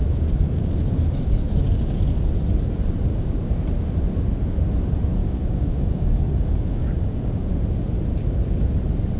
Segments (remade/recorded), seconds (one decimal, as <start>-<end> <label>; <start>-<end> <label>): 0.0-2.0 remade; 2.0-3.1 recorded; 3.1-3.6 remade; 3.6-5.2 recorded; 5.2-7.5 remade; 7.5-9.2 recorded

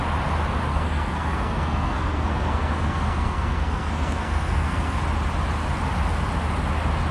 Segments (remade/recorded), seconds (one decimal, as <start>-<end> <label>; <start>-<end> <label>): 0.0-0.7 recorded; 0.7-5.0 remade; 5.0-7.1 recorded

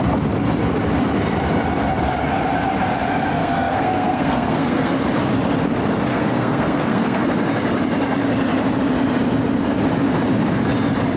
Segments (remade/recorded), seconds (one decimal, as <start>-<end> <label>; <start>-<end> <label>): 0.0-3.4 recorded; 3.4-5.0 remade; 5.0-6.1 recorded; 6.1-7.2 remade; 7.2-11.2 recorded

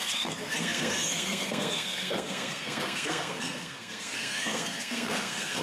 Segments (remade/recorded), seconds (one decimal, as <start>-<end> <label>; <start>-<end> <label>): 0.0-5.6 remade